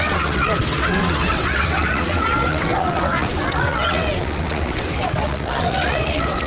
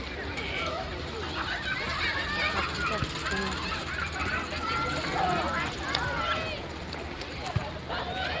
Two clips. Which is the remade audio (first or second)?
first